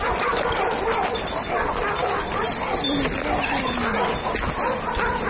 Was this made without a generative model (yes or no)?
yes